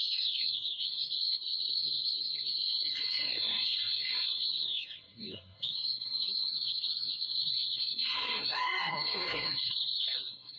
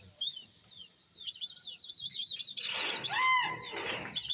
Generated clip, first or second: first